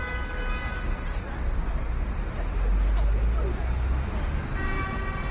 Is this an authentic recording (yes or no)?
yes